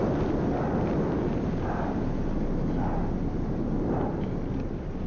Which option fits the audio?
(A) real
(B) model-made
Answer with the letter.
A